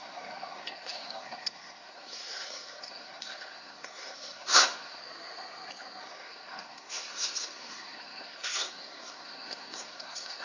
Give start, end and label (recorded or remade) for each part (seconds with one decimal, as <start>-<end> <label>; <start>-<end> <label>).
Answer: 0.0-5.0 remade; 5.0-6.0 recorded; 6.0-10.4 remade